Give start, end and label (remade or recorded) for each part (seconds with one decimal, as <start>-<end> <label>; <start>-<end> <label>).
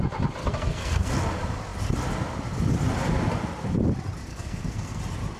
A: 0.0-0.4 recorded; 0.4-1.1 remade; 1.1-4.3 recorded; 4.3-5.0 remade; 5.0-5.4 recorded